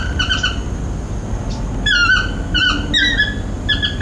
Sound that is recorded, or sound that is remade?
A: recorded